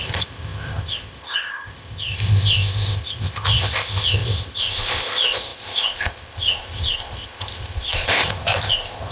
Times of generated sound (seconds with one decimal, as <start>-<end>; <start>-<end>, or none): 0.0-9.1